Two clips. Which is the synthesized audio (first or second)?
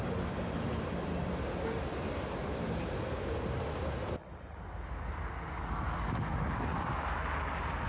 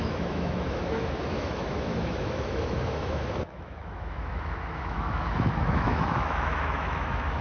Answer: second